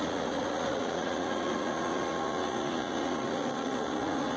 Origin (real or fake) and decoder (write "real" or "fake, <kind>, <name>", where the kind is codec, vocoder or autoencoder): fake, vocoder, Vocos